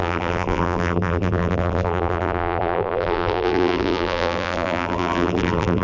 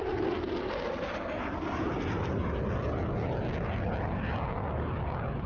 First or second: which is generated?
first